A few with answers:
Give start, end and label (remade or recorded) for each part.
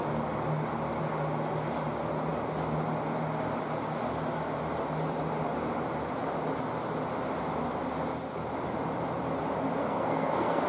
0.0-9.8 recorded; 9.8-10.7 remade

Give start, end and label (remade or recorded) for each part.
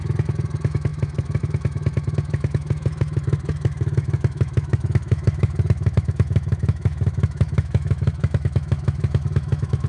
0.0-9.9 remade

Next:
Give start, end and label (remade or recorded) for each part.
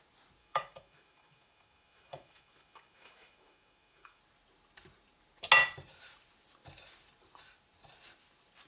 0.0-0.4 recorded; 0.4-4.2 remade; 4.2-8.7 recorded